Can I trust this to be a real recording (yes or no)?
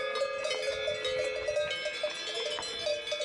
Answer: yes